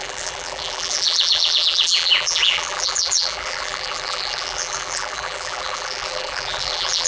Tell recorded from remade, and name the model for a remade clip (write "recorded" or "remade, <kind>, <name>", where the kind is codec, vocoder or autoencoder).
remade, vocoder, BigVGAN v2